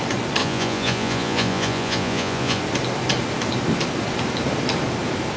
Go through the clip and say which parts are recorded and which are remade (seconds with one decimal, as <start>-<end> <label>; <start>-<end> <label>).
0.0-0.4 recorded; 0.4-2.6 remade; 2.6-5.4 recorded